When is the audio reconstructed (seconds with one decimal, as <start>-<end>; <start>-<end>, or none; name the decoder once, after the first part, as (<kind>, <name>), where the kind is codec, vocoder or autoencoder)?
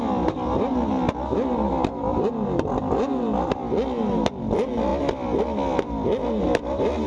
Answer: none